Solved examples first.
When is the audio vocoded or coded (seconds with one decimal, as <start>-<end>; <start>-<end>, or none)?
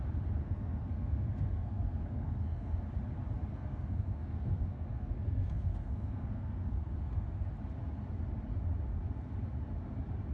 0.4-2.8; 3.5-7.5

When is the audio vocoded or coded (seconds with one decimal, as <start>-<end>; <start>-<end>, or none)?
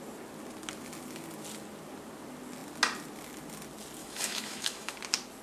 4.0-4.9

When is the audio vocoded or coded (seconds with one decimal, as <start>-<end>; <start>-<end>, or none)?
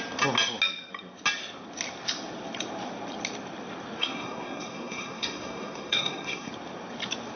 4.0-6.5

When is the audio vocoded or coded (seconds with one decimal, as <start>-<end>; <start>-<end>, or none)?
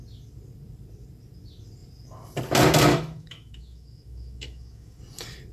2.9-5.0